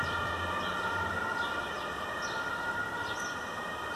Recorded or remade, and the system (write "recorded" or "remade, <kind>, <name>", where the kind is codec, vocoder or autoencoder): recorded